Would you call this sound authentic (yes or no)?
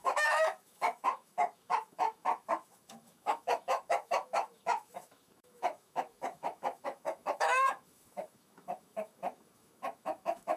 no